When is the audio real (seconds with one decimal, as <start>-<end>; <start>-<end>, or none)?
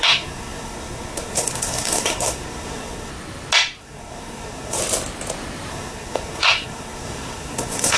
3.1-3.8; 4.8-5.7